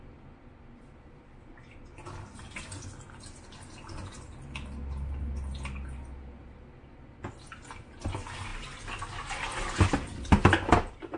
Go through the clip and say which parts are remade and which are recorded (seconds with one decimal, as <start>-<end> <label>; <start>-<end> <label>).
0.0-11.2 recorded